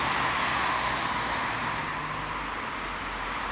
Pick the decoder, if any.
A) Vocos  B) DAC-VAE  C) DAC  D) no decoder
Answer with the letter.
D